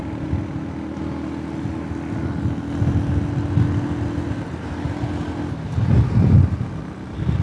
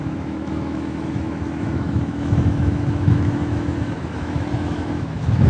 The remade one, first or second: second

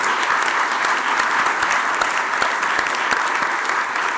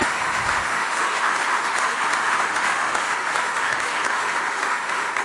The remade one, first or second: second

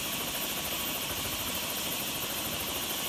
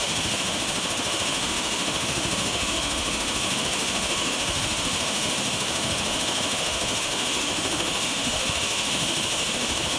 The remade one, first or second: second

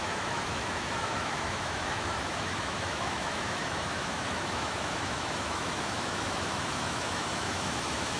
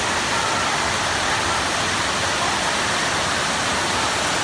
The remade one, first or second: first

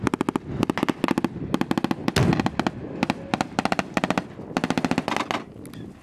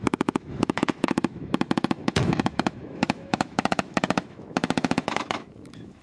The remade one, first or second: second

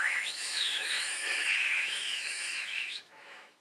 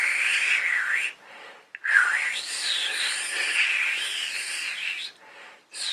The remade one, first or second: first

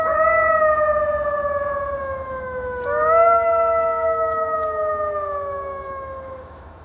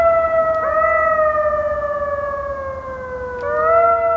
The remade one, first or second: first